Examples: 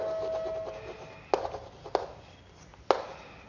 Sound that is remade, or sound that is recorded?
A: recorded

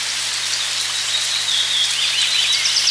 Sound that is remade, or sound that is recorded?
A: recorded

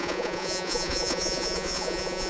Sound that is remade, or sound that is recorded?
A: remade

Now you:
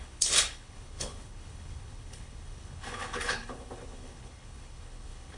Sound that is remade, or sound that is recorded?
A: remade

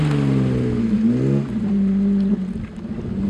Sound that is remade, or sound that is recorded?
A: recorded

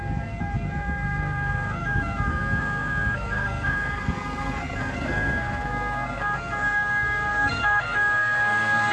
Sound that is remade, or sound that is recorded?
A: remade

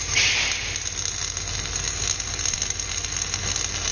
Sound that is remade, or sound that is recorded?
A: recorded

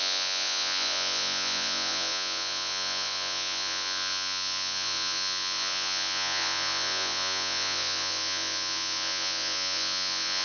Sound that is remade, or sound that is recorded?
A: remade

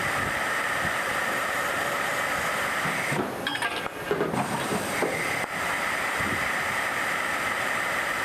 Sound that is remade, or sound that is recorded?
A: remade